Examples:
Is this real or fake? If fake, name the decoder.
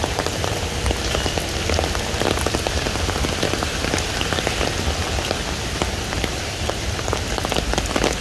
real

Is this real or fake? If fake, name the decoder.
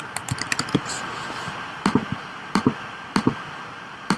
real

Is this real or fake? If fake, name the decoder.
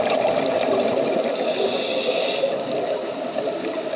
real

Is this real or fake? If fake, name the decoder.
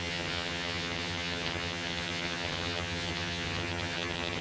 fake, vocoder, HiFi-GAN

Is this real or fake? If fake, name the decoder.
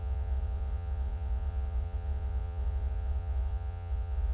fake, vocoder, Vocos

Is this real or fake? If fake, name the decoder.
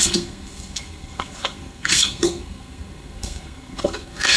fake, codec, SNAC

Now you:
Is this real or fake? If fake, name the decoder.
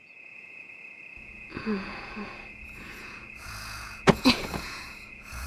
fake, vocoder, Vocos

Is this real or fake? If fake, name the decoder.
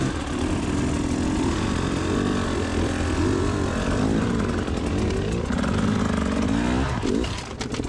real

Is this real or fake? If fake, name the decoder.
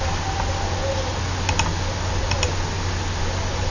real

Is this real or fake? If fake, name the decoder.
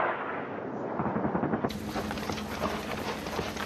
real